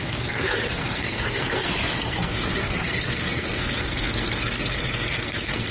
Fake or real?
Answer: fake